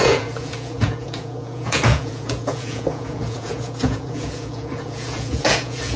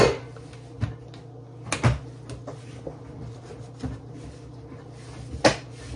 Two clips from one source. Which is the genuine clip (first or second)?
second